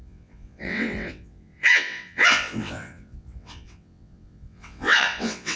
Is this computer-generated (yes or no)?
yes